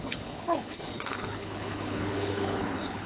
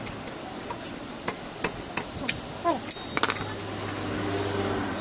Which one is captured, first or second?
second